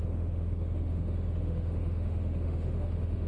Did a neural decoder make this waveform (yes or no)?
yes